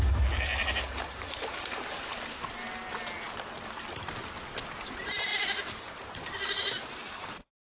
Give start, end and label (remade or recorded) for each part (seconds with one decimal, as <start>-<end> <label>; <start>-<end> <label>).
0.0-0.5 recorded; 0.5-2.4 remade; 2.4-5.3 recorded; 5.3-7.6 remade